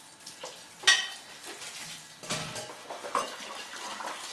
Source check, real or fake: real